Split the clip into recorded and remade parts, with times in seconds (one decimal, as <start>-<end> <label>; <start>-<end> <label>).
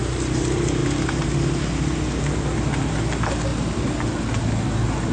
0.0-5.1 recorded